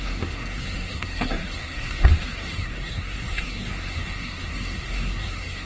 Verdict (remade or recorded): remade